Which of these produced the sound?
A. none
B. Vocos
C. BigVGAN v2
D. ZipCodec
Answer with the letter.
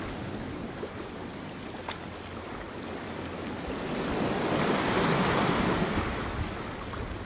A